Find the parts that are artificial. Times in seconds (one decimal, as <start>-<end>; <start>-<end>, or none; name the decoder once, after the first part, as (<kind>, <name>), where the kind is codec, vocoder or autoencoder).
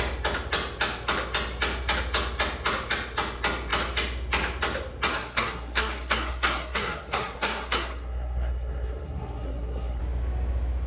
5.1-10.0 (codec, SNAC)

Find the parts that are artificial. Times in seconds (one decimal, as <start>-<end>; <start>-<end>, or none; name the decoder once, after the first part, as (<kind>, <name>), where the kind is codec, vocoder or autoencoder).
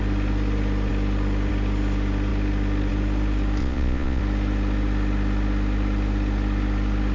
3.6-4.2 (vocoder, Vocos)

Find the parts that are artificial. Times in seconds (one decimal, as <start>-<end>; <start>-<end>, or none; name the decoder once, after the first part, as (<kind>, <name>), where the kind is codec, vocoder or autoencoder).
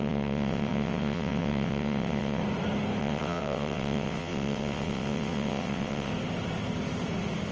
0.0-2.4 (vocoder, WaveNeXt); 3.0-6.1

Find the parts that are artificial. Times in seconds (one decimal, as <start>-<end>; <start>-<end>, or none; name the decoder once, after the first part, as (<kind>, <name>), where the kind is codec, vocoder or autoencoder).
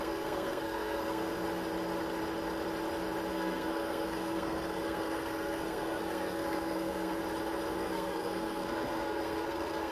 0.0-1.3 (codec, SNAC); 3.3-7.2; 7.8-9.9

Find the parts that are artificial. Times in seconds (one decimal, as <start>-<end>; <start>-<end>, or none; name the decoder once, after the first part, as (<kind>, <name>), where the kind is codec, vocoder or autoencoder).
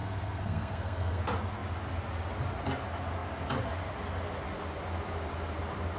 0.0-1.2 (codec, SNAC)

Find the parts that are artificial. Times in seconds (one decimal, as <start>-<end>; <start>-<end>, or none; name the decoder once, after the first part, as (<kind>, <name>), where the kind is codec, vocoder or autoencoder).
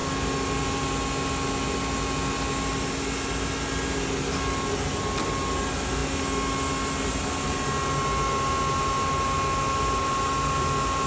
none